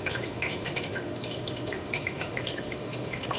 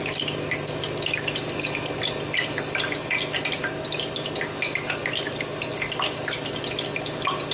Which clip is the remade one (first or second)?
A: first